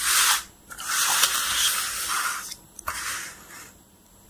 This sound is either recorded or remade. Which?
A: recorded